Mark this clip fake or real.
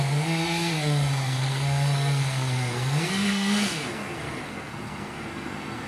fake